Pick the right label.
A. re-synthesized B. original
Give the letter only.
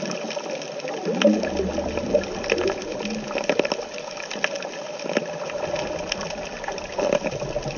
B